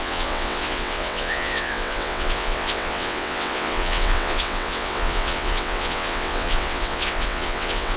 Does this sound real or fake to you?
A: fake